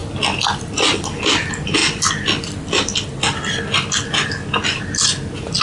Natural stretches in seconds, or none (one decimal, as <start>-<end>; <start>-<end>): 0.0-5.6